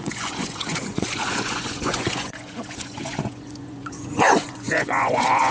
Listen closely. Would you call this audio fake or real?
fake